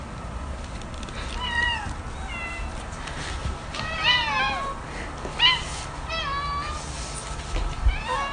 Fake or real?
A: real